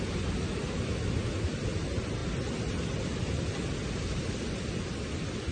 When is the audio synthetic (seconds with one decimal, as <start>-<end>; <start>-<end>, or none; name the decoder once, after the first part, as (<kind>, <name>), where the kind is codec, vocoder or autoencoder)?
none